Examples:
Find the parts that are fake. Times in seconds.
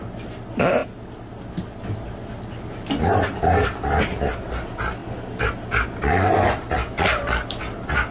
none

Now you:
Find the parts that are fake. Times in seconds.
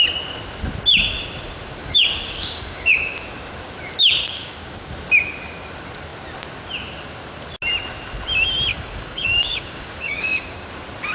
1.8-3.2; 4.2-4.9; 8.7-10.7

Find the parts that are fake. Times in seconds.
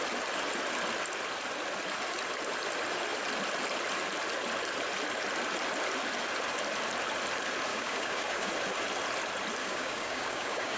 7.7-8.5; 9.6-10.8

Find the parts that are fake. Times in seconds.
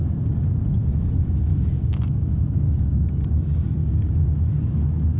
1.5-3.0; 3.8-4.5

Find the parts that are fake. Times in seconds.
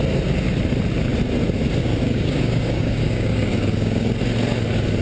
1.8-4.2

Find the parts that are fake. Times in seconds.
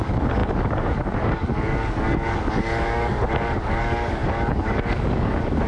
0.0-5.7